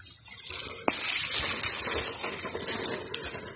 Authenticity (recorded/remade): recorded